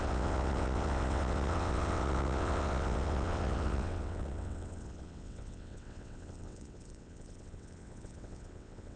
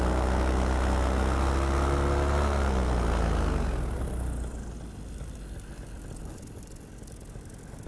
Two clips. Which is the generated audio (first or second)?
first